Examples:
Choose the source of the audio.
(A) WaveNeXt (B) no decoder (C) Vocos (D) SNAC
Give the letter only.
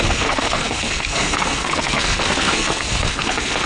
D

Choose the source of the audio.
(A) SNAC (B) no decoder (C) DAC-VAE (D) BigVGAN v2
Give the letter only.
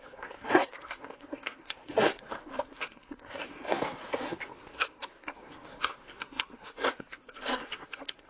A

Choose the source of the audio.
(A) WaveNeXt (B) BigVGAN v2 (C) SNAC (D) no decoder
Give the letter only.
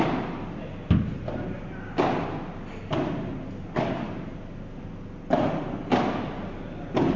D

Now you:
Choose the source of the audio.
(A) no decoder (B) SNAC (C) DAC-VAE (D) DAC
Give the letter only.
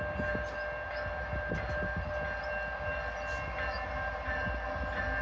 A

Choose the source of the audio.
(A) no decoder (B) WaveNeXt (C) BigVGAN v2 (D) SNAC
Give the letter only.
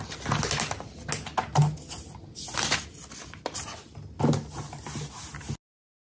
A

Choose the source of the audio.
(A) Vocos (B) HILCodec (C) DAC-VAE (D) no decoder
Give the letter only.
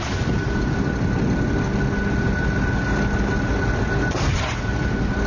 D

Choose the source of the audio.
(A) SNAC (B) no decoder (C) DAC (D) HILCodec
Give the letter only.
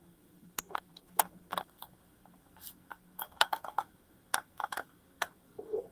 A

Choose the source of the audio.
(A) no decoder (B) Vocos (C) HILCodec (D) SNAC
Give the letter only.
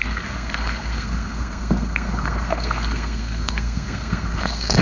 D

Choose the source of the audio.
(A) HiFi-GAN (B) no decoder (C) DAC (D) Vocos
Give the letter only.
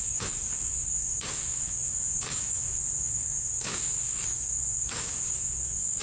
C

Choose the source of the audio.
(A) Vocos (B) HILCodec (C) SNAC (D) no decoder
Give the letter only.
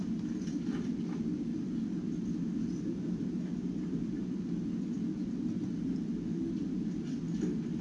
D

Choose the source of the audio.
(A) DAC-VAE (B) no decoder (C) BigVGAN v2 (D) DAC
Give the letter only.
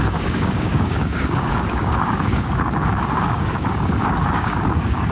D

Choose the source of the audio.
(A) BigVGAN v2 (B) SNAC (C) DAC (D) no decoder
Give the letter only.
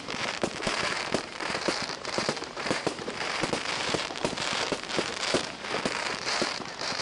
A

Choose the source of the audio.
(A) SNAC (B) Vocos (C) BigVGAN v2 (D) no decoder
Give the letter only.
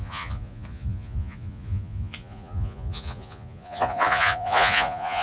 B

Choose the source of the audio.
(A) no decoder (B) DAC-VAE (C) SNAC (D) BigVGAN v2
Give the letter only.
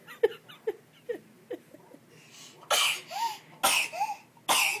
A